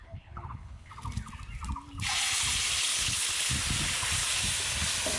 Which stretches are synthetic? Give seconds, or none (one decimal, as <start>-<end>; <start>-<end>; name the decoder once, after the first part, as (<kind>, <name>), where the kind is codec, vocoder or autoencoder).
0.0-0.9 (codec, HILCodec); 2.9-3.5